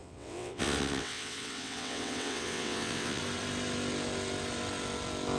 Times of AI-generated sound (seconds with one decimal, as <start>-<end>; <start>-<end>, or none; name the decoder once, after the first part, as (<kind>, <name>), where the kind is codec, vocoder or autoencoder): 0.0-3.2 (vocoder, WaveNeXt)